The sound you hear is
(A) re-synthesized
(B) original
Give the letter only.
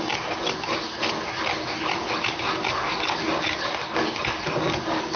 B